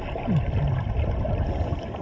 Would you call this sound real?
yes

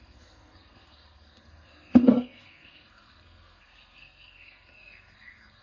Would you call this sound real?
no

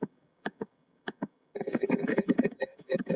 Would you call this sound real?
no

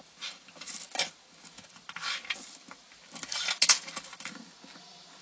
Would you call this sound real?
yes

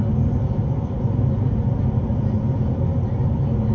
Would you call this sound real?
yes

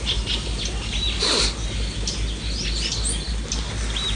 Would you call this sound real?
yes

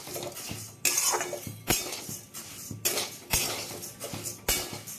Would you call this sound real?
yes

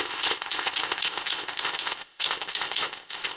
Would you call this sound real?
no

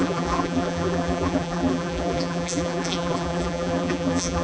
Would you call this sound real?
no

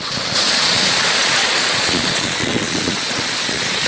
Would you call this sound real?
no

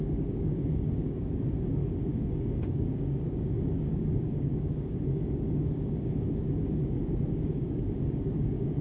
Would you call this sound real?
no